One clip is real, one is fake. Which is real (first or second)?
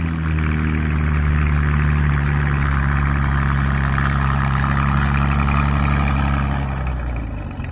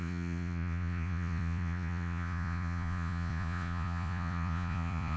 first